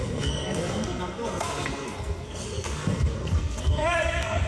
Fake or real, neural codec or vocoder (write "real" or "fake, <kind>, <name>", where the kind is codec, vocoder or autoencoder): fake, codec, SNAC